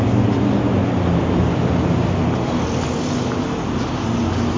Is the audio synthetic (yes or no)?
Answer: no